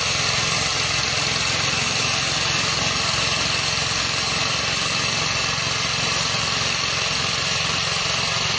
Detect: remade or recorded recorded